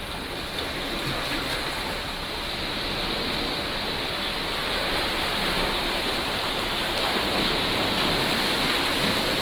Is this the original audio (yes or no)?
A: yes